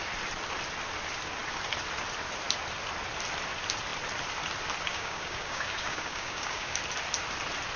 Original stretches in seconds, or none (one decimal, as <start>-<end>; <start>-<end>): 0.0-4.9; 6.8-7.8